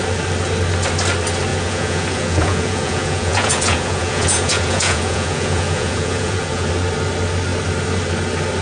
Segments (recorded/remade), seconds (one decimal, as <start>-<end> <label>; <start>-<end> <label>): 0.0-1.5 recorded; 1.5-6.7 remade; 6.7-8.6 recorded